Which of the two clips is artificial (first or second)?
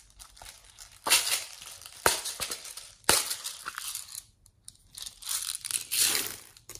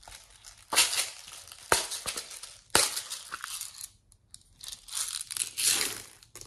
first